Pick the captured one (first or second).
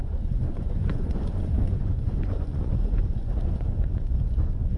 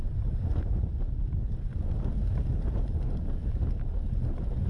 second